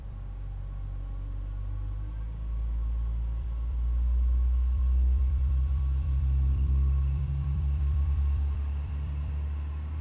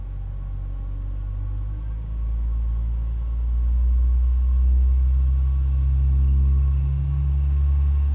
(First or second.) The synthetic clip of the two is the first